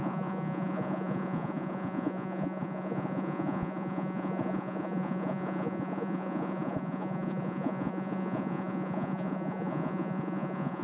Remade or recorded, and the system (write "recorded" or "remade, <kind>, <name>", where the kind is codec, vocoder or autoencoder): remade, vocoder, Vocos